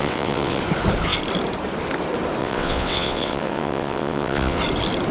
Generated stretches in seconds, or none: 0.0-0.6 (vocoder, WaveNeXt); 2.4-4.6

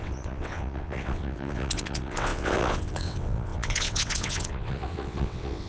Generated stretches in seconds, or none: 0.0-5.7 (vocoder, WaveNeXt)

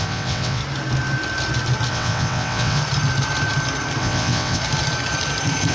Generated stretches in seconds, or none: 0.0-0.6 (vocoder, WaveNeXt); 1.9-2.8; 4.0-4.6

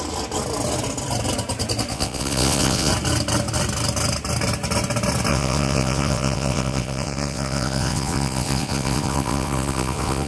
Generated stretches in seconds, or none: 1.9-2.9 (vocoder, WaveNeXt); 5.3-10.3

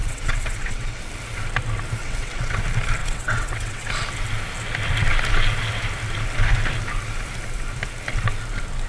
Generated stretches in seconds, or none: 0.0-1.0 (vocoder, WaveNeXt); 2.0-2.6; 3.0-3.9

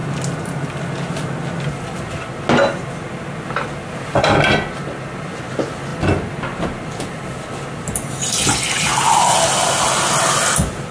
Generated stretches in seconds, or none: none

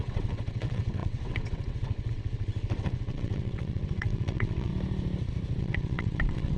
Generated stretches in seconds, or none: 0.0-4.7 (vocoder, WaveNeXt); 5.6-6.6